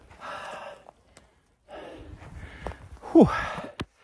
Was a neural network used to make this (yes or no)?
no